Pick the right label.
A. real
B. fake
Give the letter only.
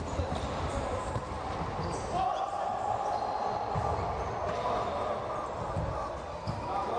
A